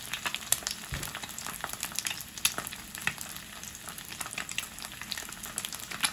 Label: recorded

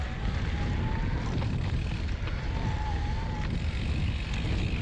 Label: recorded